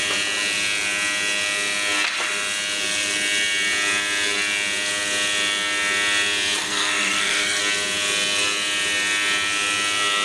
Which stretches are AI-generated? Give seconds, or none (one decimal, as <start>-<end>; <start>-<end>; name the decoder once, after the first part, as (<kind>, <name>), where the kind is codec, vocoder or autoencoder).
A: 6.6-7.6 (codec, SNAC)